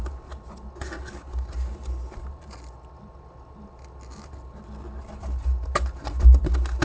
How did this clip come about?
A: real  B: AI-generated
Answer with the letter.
A